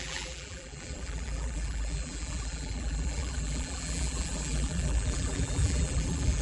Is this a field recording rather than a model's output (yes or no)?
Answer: no